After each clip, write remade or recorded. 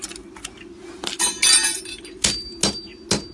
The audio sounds recorded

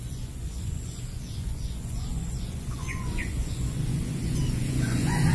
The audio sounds remade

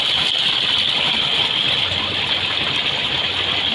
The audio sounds recorded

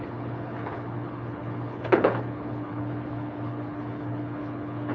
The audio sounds remade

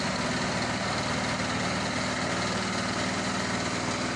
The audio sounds recorded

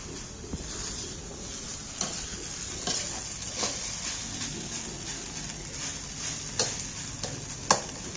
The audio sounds recorded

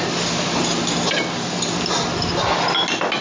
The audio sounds recorded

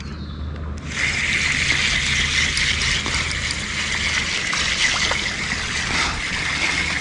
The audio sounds recorded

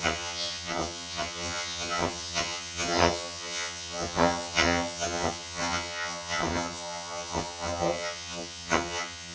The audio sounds remade